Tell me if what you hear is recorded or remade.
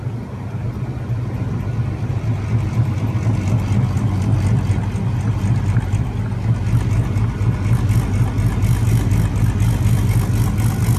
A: recorded